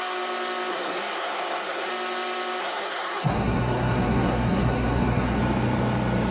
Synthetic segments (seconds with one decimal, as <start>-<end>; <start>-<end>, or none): 0.7-1.9; 2.6-5.4